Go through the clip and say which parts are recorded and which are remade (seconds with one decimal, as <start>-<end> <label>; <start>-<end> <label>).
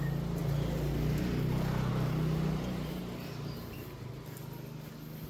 0.0-0.4 recorded; 0.4-1.9 remade; 1.9-3.0 recorded; 3.0-4.2 remade; 4.2-5.3 recorded